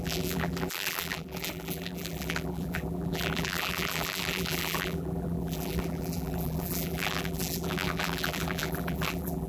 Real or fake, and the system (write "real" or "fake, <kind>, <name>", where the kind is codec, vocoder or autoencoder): fake, vocoder, BigVGAN v2